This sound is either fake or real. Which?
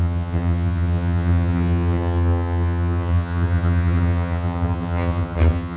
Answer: fake